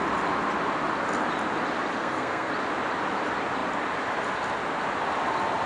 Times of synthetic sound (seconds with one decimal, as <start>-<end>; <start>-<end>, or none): 2.0-2.5